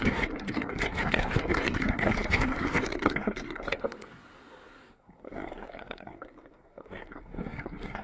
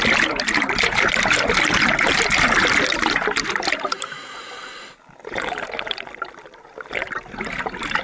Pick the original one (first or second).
second